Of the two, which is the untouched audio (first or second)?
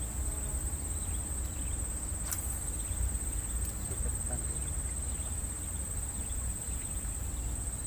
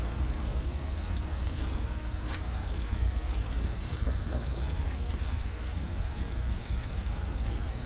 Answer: first